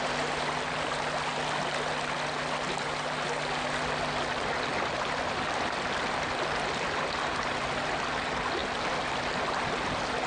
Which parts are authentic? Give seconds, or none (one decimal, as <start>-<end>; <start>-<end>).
0.0-10.3